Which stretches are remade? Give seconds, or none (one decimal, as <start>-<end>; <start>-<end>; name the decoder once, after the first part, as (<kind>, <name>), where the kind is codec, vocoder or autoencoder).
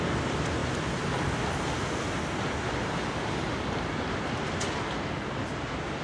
none